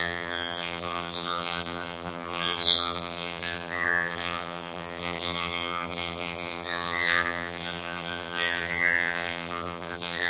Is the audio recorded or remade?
remade